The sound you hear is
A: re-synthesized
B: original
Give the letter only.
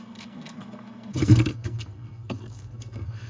A